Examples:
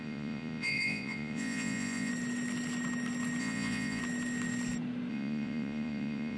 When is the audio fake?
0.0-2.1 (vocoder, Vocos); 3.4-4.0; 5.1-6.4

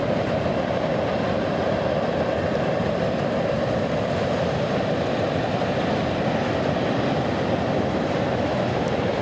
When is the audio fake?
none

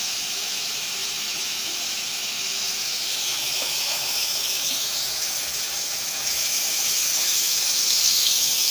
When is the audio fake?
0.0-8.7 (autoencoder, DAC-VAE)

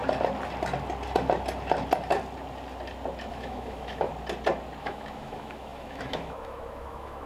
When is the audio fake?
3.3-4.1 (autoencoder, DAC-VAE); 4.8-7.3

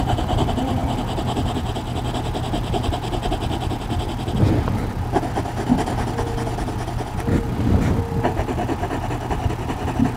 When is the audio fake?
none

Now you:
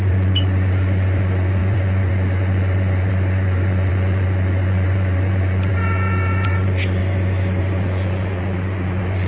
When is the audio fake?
0.0-7.0 (vocoder, Vocos); 7.6-9.3

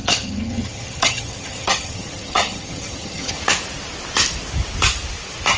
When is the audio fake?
0.0-3.4 (vocoder, HiFi-GAN)